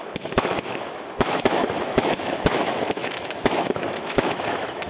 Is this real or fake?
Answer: fake